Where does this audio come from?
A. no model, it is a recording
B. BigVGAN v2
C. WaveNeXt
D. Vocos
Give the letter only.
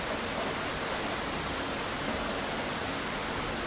A